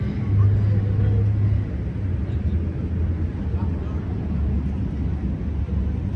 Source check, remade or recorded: recorded